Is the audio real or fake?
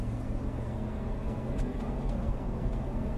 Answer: fake